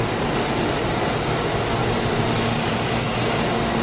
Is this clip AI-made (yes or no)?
no